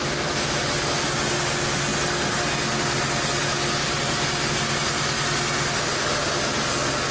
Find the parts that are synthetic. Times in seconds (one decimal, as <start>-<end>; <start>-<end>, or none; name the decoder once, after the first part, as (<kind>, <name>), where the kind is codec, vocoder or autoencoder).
none